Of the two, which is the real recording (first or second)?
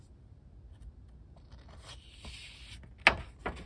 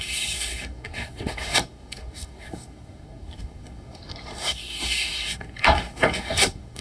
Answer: first